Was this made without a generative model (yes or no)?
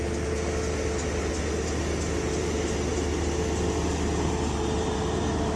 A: yes